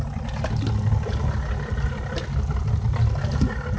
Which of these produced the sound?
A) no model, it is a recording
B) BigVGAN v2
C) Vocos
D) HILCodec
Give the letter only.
A